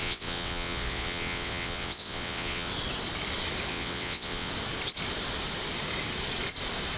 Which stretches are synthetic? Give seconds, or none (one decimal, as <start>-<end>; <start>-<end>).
0.0-2.7; 3.7-4.5